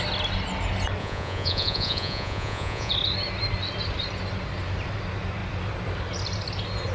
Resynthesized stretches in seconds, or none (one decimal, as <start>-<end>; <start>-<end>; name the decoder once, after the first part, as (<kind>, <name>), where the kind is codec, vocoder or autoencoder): 1.0-2.9 (vocoder, Vocos)